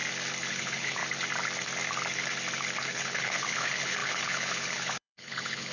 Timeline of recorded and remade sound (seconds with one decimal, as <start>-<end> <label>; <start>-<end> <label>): 0.0-0.5 recorded; 0.5-1.0 remade; 1.0-2.8 recorded; 2.8-5.7 remade